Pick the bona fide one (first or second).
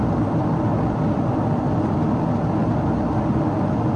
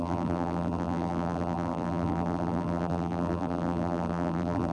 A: first